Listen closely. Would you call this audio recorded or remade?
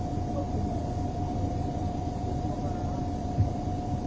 remade